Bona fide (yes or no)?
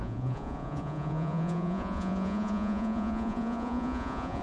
no